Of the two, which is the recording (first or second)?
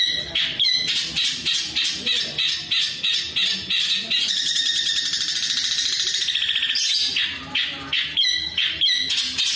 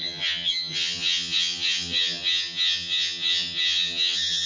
first